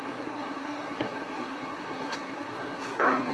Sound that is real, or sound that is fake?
fake